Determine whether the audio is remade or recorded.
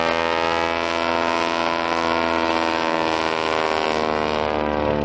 recorded